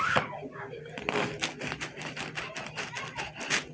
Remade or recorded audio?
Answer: recorded